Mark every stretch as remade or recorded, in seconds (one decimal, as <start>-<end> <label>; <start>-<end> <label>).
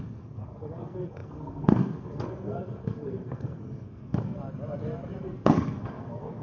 0.0-4.4 remade; 4.4-5.2 recorded; 5.2-6.4 remade